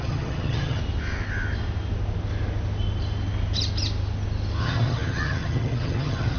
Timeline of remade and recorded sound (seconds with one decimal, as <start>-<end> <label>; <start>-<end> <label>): 0.0-0.8 remade; 0.8-4.6 recorded; 4.6-6.4 remade